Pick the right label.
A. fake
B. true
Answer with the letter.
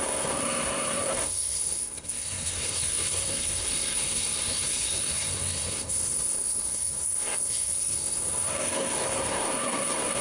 A